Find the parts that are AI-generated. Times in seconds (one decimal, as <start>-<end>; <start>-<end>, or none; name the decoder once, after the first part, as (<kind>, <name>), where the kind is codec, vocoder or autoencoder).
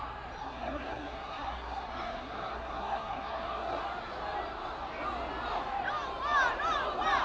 0.4-3.8 (codec, SNAC)